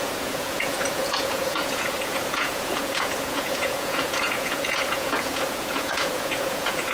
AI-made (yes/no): yes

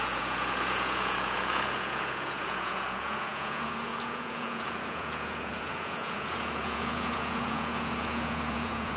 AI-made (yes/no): yes